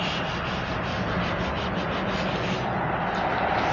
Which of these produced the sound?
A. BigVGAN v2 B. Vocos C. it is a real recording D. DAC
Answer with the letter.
C